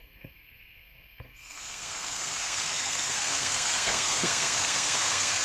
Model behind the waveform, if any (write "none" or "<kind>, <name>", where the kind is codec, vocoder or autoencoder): codec, SNAC